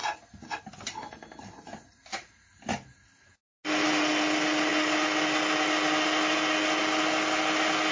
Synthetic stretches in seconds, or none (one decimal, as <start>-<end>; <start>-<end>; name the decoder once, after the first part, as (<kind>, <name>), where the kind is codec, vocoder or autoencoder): none